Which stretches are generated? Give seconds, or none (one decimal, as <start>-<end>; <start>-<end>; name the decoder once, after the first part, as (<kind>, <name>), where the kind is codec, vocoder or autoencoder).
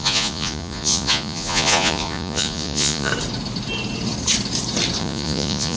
0.0-3.1 (vocoder, Vocos); 5.0-5.8